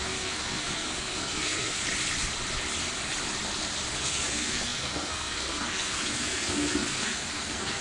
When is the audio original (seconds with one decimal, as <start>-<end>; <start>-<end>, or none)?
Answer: 1.8-3.9